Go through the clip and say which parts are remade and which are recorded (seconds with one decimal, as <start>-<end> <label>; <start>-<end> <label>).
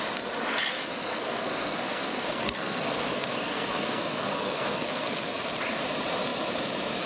0.0-1.1 recorded; 1.1-5.4 remade; 5.4-7.1 recorded